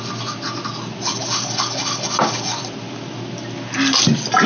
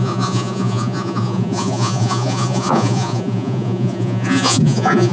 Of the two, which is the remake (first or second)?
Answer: second